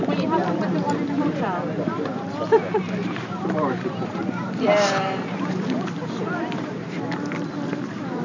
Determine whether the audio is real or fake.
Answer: fake